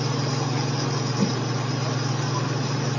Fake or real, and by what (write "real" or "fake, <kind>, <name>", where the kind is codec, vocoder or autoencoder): real